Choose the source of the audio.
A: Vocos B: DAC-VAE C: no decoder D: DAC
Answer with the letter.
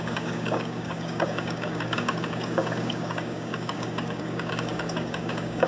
D